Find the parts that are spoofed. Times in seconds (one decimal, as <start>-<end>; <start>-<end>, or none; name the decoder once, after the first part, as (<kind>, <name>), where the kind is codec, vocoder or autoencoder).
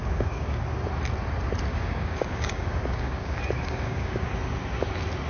0.0-0.6 (codec, DAC); 1.7-4.3